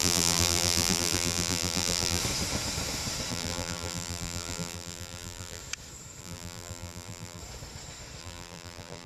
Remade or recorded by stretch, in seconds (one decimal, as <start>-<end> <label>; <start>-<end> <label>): 0.0-2.2 remade; 2.2-3.3 recorded; 3.3-5.6 remade; 5.6-6.2 recorded; 6.2-7.4 remade; 7.4-8.2 recorded; 8.2-9.1 remade